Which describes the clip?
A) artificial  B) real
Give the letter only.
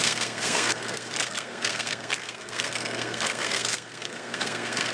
A